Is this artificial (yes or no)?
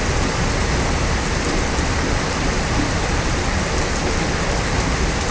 no